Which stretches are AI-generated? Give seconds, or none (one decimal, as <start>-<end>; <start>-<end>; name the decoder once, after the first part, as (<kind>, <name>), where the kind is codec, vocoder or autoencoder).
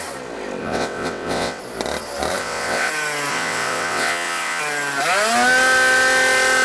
0.6-1.6 (vocoder, WaveNeXt); 2.4-2.9; 3.3-4.6